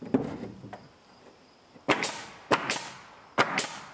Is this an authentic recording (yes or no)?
yes